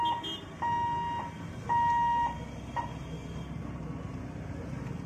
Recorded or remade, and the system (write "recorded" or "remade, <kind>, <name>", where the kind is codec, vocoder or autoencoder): recorded